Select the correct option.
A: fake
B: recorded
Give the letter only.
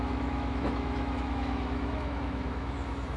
A